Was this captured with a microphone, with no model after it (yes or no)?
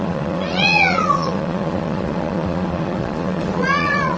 no